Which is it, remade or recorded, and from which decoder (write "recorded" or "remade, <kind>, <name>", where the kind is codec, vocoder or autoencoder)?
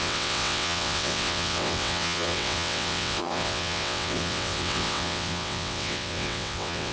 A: remade, vocoder, WaveNeXt